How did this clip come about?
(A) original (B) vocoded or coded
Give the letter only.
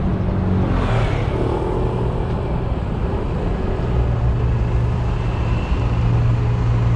A